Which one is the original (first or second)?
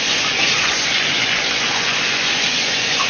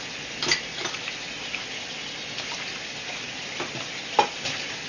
second